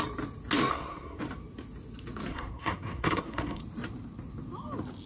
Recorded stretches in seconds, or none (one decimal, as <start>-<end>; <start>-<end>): 0.0-0.7; 1.2-2.3; 3.6-5.1